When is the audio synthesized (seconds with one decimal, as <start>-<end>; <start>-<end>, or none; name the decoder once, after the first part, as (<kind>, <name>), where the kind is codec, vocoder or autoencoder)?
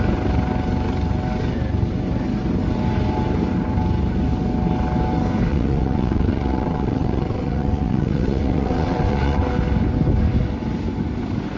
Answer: 5.5-9.5 (vocoder, WaveNeXt)